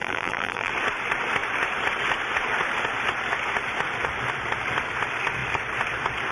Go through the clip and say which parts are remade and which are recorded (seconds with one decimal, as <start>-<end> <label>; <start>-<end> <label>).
0.0-0.7 remade; 0.7-6.3 recorded